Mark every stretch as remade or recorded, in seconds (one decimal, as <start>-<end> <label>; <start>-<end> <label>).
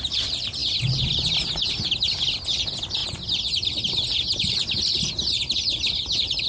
0.0-6.5 recorded